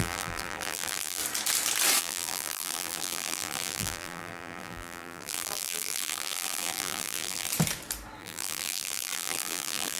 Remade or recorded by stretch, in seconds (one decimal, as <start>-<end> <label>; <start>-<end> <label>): 0.0-1.2 remade; 1.2-2.0 recorded; 2.0-7.5 remade; 7.5-8.2 recorded; 8.2-10.0 remade